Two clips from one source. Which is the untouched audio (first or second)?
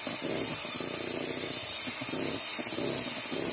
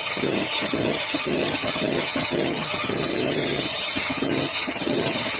first